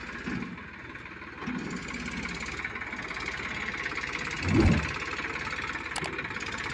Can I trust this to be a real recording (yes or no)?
yes